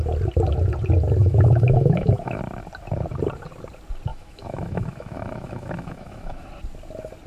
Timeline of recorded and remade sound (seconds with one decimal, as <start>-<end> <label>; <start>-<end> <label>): 0.0-1.2 recorded; 1.2-2.4 remade; 2.4-4.1 recorded; 4.1-6.5 remade; 6.5-7.3 recorded